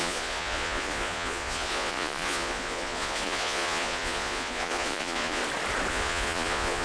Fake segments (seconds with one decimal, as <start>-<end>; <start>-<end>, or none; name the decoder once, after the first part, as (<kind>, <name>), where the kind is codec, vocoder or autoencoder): 0.0-5.4 (vocoder, Vocos); 5.9-6.8